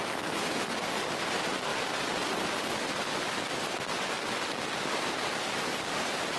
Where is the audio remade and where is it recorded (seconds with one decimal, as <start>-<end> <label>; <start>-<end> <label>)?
0.0-6.4 recorded